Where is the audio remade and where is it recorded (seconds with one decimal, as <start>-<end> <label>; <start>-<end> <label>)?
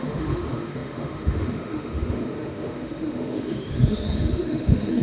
0.0-5.0 remade